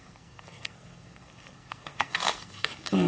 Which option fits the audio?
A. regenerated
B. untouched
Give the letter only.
A